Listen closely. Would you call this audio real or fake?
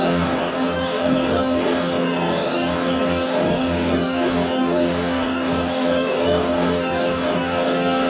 fake